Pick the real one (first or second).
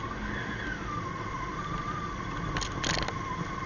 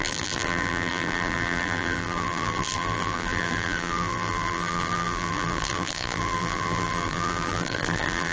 first